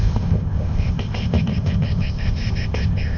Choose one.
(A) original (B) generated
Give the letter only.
B